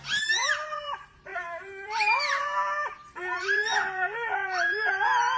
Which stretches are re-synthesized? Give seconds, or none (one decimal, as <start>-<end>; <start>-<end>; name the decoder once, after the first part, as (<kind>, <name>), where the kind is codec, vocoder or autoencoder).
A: 0.0-5.4 (vocoder, BigVGAN v2)